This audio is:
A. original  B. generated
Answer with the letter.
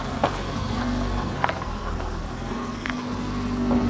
B